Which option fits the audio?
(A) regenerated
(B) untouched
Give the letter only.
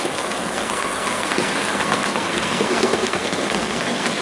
A